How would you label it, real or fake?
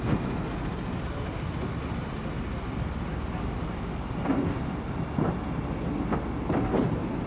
real